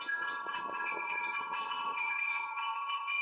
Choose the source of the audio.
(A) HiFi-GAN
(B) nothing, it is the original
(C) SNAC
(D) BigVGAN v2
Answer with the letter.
A